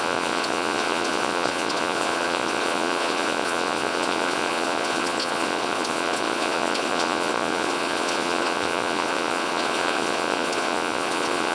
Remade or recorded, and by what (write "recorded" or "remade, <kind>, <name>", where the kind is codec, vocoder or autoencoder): remade, vocoder, Vocos